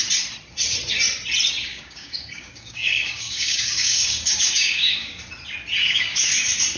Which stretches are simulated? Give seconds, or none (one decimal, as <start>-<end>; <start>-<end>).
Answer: 1.7-5.2; 5.8-6.3